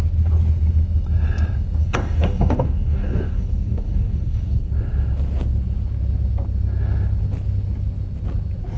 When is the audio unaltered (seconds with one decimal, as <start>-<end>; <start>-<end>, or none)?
0.0-1.8; 4.7-8.8